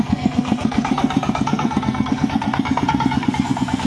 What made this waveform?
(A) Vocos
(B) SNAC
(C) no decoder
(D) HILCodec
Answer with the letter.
B